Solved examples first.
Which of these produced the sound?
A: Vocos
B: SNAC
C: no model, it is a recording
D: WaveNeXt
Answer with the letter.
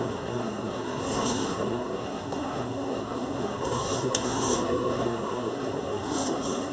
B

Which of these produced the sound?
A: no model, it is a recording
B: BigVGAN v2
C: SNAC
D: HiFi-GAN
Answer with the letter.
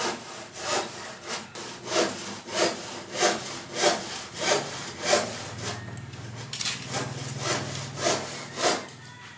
A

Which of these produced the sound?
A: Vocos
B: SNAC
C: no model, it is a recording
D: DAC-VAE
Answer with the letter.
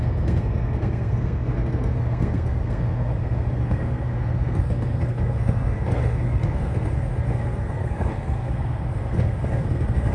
B